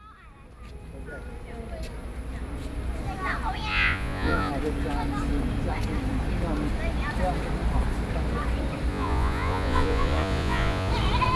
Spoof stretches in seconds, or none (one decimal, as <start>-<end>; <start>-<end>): 3.7-4.5; 8.9-10.9